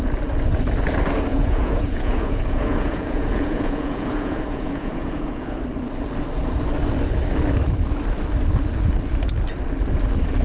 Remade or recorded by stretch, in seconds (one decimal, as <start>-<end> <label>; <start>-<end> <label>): 0.0-1.3 recorded; 1.3-5.6 remade; 5.6-10.4 recorded